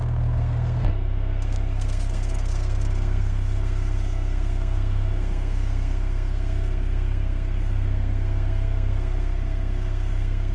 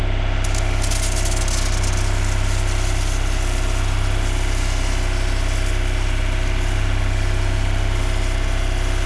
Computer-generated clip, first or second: first